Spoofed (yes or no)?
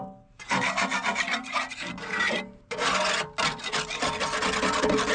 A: no